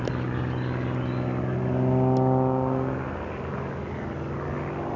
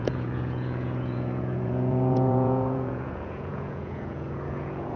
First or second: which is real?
first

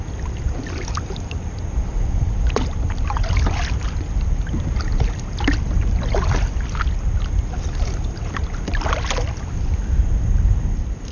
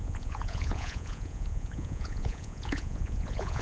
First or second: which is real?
first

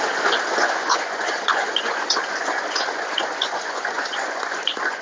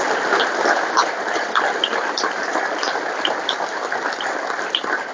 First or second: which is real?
second